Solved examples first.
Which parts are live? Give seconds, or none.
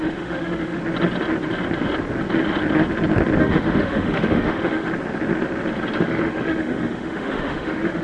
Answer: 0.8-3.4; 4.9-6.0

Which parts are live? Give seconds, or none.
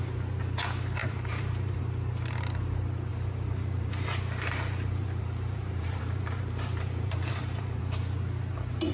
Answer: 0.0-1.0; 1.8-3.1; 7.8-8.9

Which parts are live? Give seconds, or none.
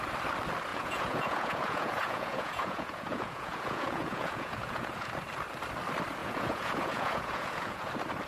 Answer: 0.0-0.7; 5.1-6.2; 7.9-8.3